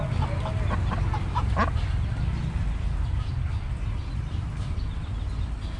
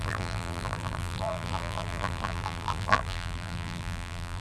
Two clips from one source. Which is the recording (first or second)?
first